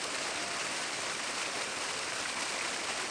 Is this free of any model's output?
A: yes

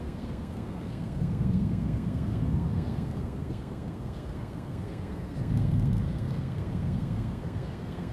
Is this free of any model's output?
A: no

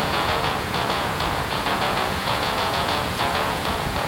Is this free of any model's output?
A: no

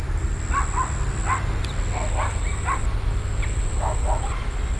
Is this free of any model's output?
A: yes